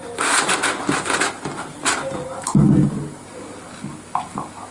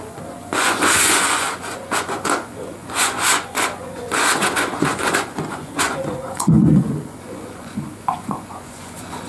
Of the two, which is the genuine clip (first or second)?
first